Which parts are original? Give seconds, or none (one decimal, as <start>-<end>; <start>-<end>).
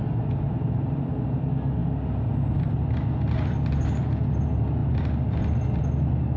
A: 0.0-6.4